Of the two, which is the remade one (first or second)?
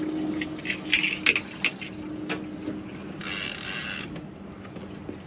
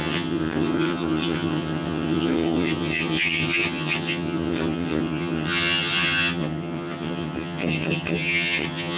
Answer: second